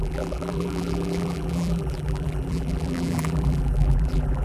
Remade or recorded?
remade